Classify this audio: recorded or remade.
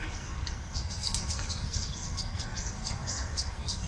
remade